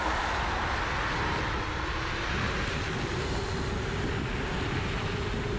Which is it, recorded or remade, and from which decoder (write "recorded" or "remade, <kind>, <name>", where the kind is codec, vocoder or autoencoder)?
recorded